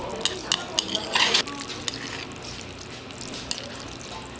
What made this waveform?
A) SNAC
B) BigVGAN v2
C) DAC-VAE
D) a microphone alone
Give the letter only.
D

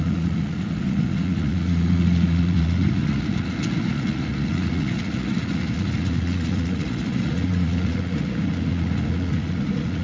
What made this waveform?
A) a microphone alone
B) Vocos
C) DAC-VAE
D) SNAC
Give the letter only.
B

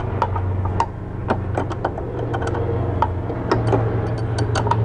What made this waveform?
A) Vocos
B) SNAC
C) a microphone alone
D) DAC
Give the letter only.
C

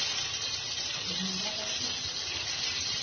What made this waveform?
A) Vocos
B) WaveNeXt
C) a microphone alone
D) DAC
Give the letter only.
C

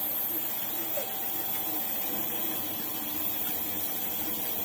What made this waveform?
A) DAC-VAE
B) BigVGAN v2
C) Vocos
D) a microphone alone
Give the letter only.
D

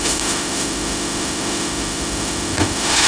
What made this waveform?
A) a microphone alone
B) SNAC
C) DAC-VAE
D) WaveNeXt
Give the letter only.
C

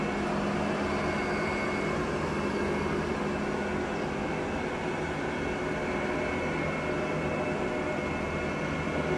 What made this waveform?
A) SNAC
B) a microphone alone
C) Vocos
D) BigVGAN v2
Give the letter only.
B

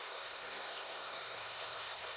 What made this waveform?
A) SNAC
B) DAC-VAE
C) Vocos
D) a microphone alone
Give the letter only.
A